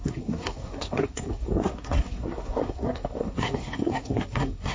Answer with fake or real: fake